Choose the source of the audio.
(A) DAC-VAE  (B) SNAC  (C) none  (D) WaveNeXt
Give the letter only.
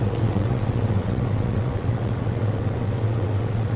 D